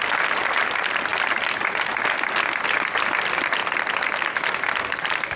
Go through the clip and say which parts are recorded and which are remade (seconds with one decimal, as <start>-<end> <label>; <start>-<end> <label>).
0.0-5.4 recorded